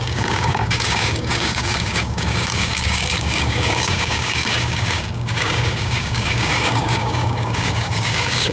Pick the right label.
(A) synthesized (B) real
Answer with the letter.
A